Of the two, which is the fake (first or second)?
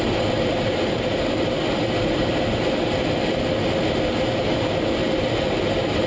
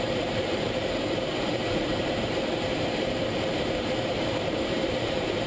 second